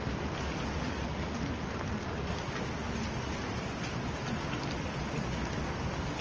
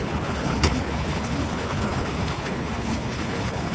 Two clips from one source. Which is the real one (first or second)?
first